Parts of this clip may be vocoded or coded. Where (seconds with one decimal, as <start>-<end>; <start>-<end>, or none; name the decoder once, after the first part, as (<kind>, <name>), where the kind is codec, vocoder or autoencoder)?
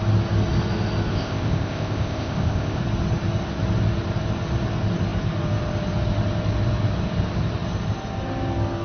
1.1-2.8 (codec, ZipCodec)